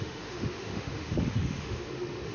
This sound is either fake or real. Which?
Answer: fake